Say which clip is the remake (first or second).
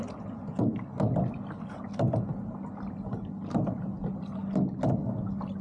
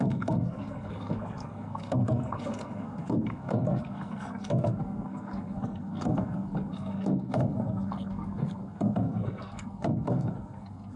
second